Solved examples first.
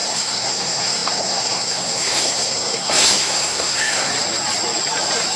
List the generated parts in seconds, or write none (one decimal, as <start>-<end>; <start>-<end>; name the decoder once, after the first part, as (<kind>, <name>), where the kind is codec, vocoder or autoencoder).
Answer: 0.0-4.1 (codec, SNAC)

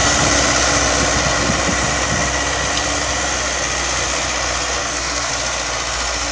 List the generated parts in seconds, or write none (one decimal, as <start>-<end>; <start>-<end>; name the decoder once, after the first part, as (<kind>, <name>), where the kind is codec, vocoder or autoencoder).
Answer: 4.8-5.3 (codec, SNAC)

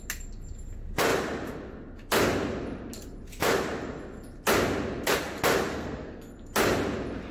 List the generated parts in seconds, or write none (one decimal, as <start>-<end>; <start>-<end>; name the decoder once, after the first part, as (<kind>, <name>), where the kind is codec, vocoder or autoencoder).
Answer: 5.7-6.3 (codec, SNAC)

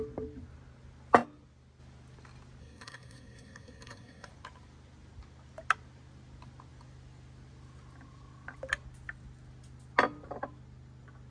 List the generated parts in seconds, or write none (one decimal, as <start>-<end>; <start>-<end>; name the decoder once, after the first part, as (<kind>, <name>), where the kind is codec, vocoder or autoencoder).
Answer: 2.6-4.3 (codec, SNAC)

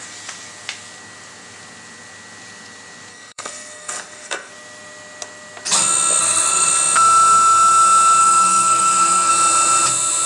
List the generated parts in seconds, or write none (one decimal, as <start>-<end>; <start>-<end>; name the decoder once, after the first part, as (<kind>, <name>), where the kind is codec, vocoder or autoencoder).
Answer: 3.1-4.5 (codec, SNAC); 6.2-6.7; 8.2-9.3

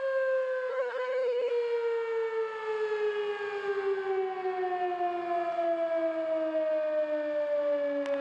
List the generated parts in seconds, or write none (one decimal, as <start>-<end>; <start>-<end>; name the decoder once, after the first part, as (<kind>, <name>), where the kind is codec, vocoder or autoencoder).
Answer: 0.7-1.5 (codec, SNAC)

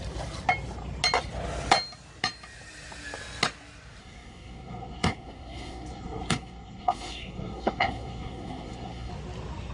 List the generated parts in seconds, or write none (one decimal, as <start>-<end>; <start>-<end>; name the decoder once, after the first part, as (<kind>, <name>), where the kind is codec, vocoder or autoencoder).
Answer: 4.0-9.1 (codec, SNAC)